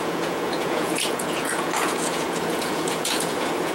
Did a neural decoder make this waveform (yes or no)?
yes